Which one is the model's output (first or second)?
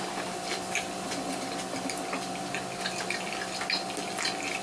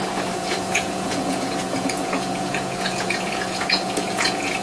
second